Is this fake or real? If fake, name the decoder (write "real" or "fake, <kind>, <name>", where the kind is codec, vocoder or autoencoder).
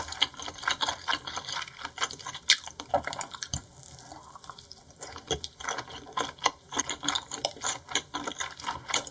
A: fake, vocoder, BigVGAN v2